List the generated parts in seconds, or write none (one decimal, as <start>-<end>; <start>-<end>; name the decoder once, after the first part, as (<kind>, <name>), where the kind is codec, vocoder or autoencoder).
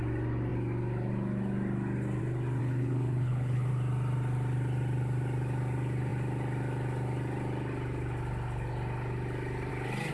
2.6-3.7 (codec, HILCodec)